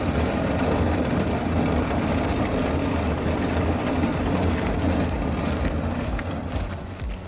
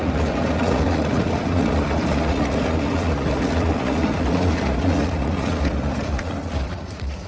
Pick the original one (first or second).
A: first